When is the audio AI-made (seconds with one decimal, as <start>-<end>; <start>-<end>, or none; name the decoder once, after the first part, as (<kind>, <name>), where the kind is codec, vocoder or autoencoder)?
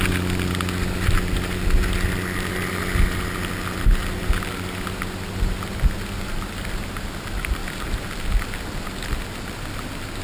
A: none